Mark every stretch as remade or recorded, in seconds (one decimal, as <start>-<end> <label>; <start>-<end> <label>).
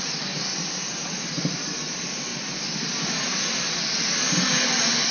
0.0-5.1 recorded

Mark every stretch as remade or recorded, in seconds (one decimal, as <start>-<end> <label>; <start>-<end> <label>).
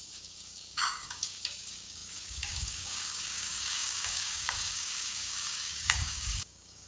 0.0-6.9 remade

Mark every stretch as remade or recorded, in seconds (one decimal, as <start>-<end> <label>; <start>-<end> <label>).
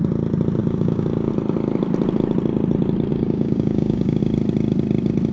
0.0-0.6 recorded; 0.6-1.3 remade; 1.3-3.1 recorded; 3.1-4.2 remade; 4.2-5.3 recorded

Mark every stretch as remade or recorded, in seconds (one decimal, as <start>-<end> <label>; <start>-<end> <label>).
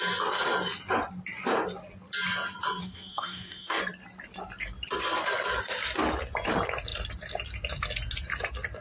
0.0-2.8 recorded; 2.8-3.8 remade; 3.8-8.8 recorded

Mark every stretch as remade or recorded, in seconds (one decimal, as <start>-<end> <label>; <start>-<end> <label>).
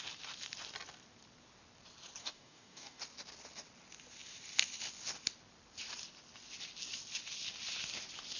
0.0-2.2 recorded; 2.2-3.0 remade; 3.0-8.4 recorded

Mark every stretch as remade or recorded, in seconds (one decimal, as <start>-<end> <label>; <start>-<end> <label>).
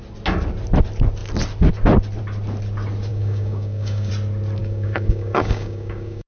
0.0-3.1 recorded; 3.1-4.1 remade; 4.1-4.6 recorded; 4.6-6.3 remade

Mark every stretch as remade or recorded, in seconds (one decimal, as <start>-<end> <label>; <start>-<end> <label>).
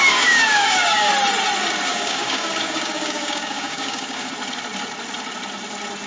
0.0-1.1 remade; 1.1-1.9 recorded; 1.9-4.3 remade; 4.3-6.1 recorded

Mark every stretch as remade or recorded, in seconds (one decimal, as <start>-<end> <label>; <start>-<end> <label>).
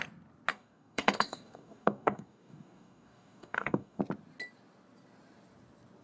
0.0-0.5 recorded; 0.5-4.0 remade; 4.0-6.0 recorded